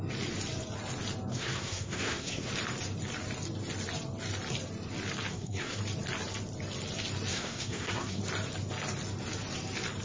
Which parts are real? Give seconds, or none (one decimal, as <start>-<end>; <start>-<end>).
0.0-1.3; 2.5-5.3; 5.8-7.3; 8.2-10.0